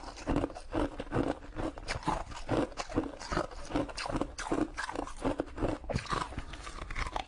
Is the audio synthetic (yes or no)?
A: no